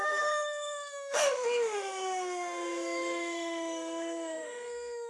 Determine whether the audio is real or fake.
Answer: fake